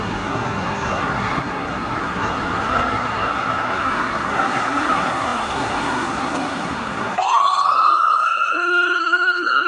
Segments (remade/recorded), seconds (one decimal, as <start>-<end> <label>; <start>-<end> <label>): 0.0-9.7 remade